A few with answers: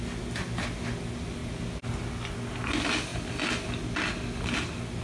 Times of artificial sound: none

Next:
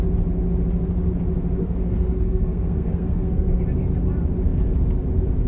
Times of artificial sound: 1.6-3.6 (codec, SNAC)

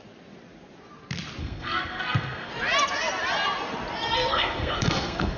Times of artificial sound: 1.4-2.5 (codec, SNAC); 4.3-5.4